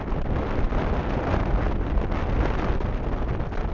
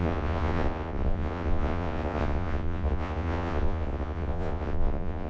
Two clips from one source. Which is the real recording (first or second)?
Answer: first